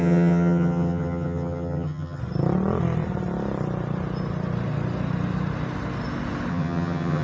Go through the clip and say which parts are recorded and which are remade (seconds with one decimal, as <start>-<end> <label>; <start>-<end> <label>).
0.0-2.2 remade; 2.2-6.5 recorded; 6.5-7.2 remade